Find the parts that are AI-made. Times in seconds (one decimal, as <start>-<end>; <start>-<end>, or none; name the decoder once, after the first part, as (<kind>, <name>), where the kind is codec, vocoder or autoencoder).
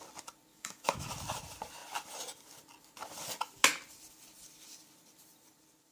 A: 0.5-1.1 (autoencoder, DAC-VAE)